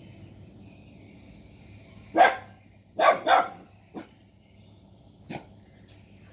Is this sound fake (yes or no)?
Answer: no